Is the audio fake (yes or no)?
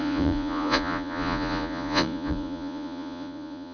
yes